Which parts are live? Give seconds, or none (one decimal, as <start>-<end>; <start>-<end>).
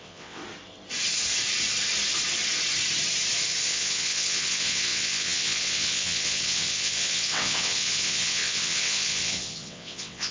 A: 0.4-3.7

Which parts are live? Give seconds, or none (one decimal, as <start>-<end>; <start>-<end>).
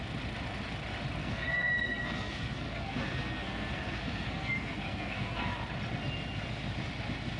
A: 0.0-1.2; 5.5-7.4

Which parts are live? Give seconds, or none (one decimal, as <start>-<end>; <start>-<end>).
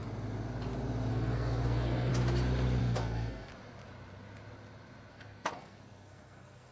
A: 0.0-1.1; 2.1-2.8; 3.5-5.1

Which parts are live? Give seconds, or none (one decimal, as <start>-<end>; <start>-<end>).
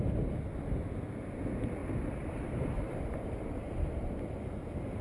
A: 0.0-1.8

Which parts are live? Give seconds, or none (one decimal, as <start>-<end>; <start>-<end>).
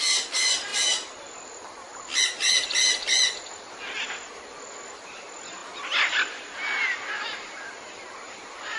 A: none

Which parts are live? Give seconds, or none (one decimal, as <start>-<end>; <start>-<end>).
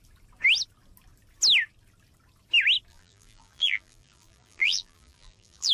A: 0.0-2.9